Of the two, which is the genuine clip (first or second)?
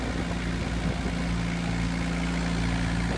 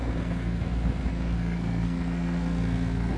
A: first